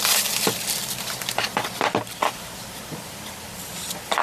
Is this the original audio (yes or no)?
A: yes